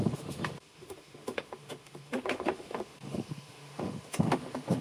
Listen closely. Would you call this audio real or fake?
fake